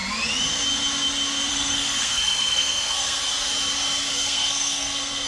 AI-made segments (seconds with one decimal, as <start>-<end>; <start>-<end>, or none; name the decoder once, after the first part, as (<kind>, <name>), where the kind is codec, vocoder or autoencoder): 1.5-3.2 (codec, SNAC); 4.1-5.3